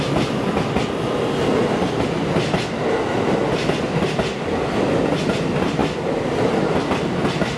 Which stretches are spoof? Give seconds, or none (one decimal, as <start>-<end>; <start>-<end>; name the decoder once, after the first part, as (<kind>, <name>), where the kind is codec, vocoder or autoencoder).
none